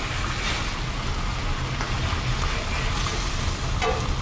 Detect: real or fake real